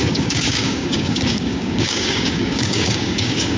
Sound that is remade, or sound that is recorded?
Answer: remade